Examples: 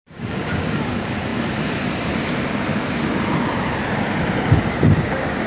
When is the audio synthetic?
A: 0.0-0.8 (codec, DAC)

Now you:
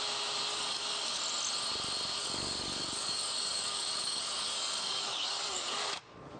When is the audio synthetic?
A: 0.5-1.2 (codec, DAC); 2.2-6.0